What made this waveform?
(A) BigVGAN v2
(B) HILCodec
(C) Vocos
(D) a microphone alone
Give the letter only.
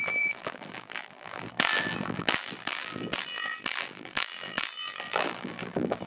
A